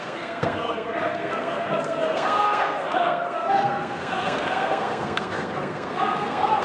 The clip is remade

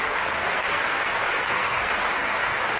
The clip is remade